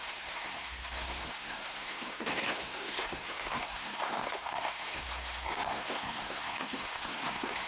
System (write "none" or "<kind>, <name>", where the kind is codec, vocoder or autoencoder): codec, SNAC